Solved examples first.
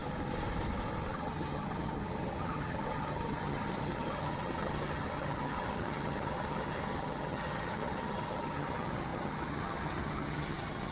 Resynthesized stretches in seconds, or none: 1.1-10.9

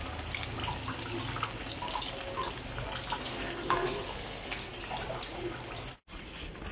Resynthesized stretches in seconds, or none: 3.2-4.7

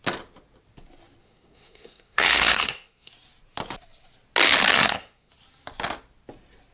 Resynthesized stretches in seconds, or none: 1.2-3.1; 4.7-5.3

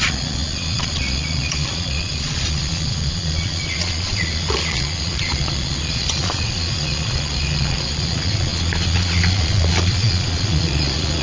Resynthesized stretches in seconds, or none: 0.0-11.2

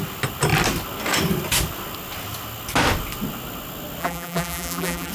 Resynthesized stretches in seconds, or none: 4.0-5.1